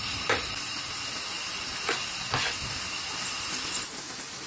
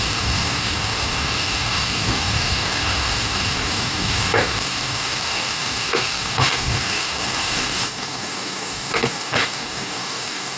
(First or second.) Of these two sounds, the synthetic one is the second